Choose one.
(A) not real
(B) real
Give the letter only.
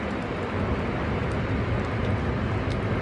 B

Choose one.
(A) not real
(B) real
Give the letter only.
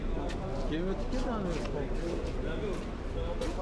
B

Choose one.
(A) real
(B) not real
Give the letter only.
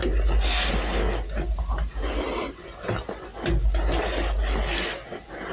A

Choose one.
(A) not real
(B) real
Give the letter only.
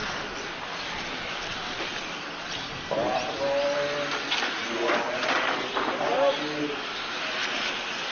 B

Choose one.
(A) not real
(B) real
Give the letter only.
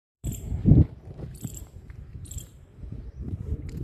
A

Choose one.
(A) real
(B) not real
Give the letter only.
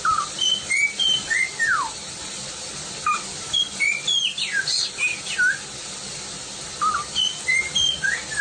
A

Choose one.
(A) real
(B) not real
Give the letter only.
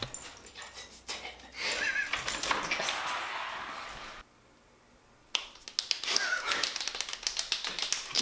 A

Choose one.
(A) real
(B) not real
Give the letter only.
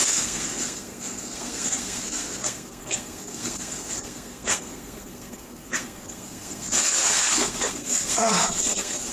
B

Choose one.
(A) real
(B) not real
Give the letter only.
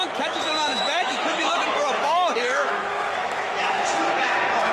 B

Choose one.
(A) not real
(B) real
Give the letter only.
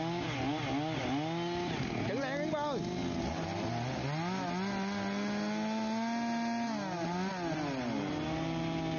B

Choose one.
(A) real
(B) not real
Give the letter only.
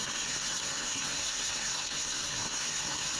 B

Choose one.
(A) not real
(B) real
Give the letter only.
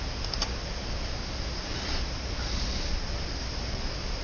B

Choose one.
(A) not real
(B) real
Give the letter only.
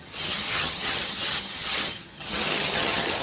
A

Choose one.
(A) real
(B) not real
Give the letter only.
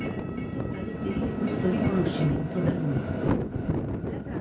A